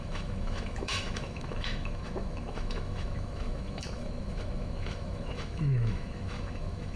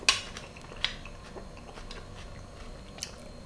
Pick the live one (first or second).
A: second